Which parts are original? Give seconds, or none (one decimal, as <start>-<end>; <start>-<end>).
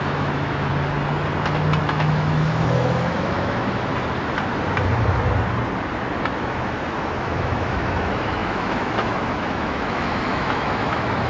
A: 0.7-1.8; 3.9-6.3